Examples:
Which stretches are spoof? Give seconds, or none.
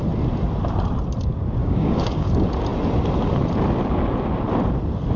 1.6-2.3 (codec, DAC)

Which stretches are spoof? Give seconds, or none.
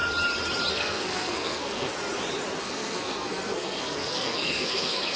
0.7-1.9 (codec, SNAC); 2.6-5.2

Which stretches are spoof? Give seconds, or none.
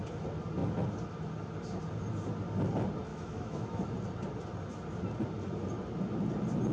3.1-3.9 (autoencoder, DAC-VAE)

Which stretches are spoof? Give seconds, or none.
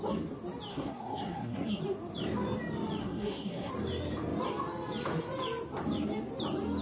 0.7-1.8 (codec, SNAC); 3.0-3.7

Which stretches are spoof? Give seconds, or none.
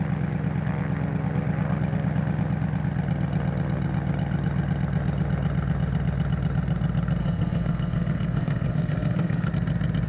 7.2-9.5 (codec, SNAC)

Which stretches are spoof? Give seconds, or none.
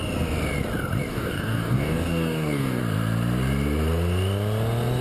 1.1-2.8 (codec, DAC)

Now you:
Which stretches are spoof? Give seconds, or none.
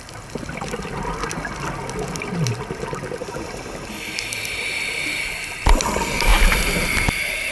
none